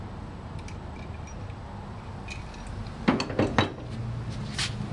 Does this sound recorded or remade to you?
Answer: recorded